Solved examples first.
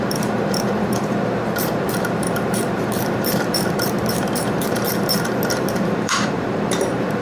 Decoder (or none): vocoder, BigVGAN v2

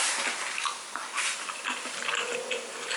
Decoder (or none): none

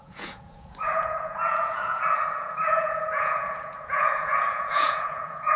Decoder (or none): vocoder, Vocos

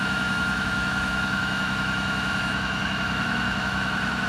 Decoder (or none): autoencoder, DAC-VAE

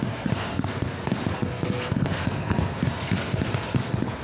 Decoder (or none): codec, SNAC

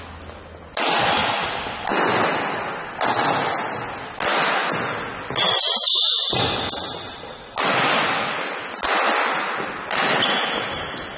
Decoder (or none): none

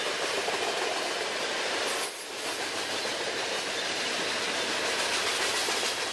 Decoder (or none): none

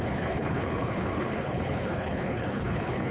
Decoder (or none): codec, HILCodec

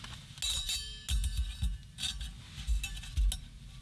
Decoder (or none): none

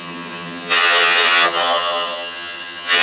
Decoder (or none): vocoder, HiFi-GAN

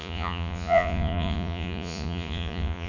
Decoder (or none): vocoder, Vocos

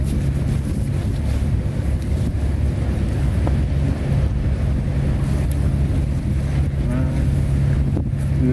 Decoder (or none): none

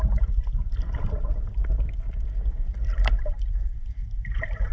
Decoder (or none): none